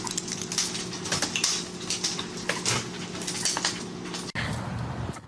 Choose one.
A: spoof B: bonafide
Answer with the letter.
B